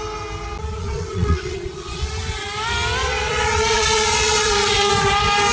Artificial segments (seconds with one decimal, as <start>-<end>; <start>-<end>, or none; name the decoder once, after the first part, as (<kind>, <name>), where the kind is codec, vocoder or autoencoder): 0.8-2.1 (vocoder, Vocos); 3.0-4.9